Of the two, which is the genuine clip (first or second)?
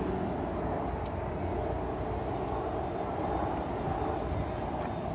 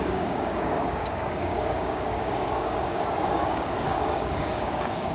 first